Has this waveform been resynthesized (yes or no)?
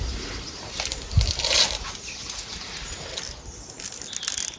no